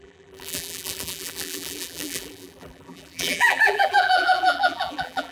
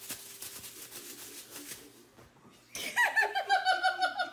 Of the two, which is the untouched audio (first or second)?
second